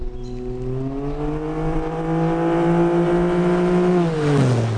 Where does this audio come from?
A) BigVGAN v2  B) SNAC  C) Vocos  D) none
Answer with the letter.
D